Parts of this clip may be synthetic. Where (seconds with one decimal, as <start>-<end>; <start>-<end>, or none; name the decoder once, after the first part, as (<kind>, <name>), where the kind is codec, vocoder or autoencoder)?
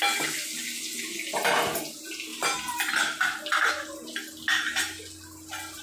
none